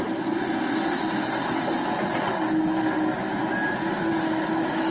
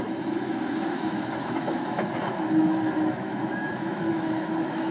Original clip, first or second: first